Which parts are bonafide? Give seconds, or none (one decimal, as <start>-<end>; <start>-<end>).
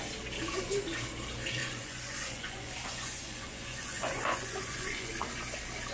0.0-1.6; 5.1-5.9